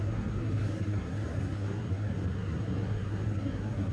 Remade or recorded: remade